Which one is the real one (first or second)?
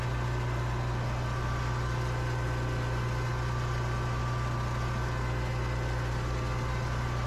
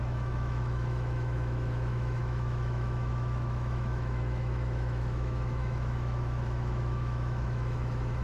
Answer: first